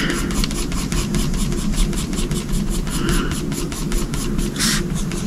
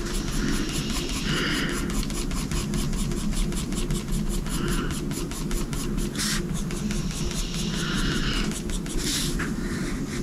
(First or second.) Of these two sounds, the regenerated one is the first